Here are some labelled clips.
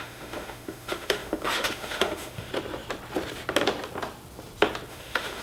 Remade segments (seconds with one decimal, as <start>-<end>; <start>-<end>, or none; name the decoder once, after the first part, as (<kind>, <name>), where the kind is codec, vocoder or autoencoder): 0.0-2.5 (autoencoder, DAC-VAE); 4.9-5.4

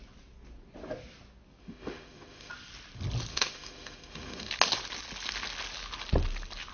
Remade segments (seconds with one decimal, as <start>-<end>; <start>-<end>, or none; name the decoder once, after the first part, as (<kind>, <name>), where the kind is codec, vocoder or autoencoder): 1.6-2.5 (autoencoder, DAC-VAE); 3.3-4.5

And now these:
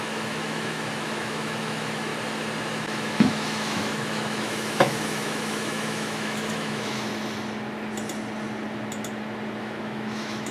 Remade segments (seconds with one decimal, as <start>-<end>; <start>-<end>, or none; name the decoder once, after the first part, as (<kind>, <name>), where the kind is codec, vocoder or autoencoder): 0.0-2.1 (autoencoder, DAC-VAE); 2.7-7.1; 9.6-10.5